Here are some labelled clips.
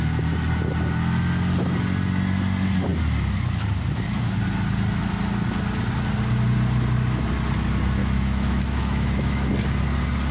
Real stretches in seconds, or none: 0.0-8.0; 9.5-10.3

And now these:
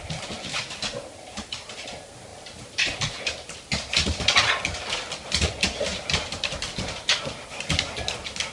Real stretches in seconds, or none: 0.0-2.3; 3.0-5.9; 7.2-8.5